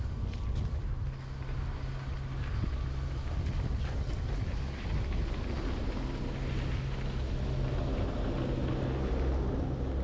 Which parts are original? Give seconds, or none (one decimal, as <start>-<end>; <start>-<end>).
0.0-10.0